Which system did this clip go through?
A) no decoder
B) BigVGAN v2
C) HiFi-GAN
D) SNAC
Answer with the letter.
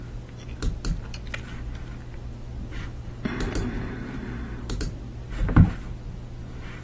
A